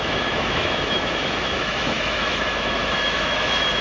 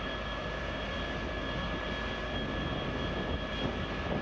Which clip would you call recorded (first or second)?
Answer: second